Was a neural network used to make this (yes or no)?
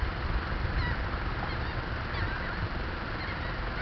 no